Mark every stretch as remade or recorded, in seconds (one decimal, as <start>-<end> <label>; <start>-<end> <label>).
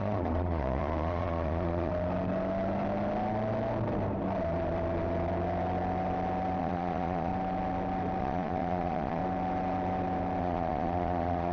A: 0.0-1.9 remade; 1.9-6.6 recorded; 6.6-7.3 remade; 7.3-8.2 recorded; 8.2-9.2 remade; 9.2-10.4 recorded; 10.4-11.5 remade